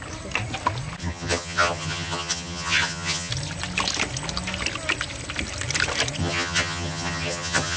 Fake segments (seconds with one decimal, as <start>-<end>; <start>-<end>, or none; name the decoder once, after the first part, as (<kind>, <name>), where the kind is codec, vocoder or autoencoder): 1.0-3.3 (vocoder, HiFi-GAN); 6.2-7.8